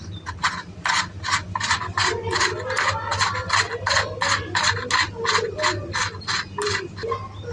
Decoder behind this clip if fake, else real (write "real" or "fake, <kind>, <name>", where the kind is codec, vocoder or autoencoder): real